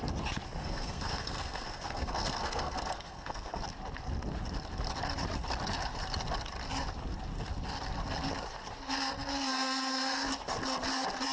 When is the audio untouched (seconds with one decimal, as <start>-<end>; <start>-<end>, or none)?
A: 0.0-0.6; 3.6-11.3